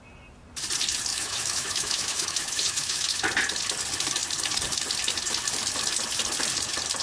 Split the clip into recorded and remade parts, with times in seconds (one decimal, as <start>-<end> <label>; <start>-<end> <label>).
0.0-1.1 recorded; 1.1-3.2 remade; 3.2-7.0 recorded